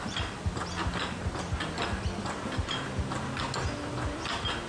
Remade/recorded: recorded